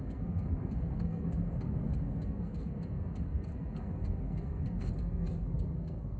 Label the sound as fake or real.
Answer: fake